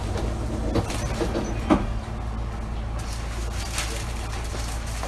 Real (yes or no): yes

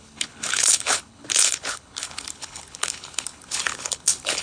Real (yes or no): no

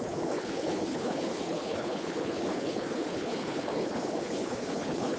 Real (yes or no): no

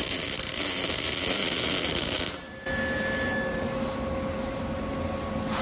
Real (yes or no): yes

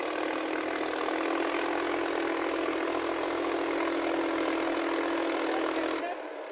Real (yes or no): yes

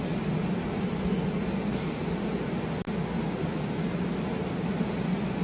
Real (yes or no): yes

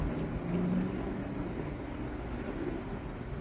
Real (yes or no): yes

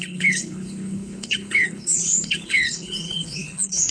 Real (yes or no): no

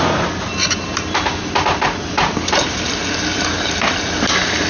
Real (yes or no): yes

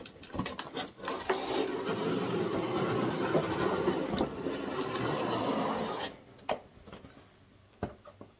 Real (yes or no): yes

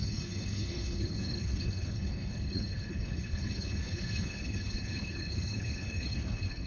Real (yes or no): no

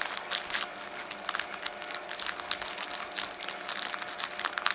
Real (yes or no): yes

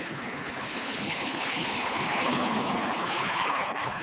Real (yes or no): no